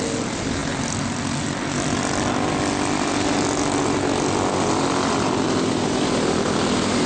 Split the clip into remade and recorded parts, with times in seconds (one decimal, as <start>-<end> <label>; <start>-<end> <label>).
0.0-0.6 recorded; 0.6-3.1 remade; 3.1-7.1 recorded